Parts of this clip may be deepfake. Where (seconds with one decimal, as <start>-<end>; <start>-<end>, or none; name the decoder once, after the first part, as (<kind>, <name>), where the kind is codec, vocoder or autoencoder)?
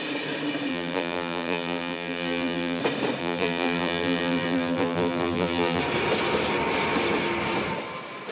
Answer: 0.7-2.8 (vocoder, BigVGAN v2); 3.2-5.8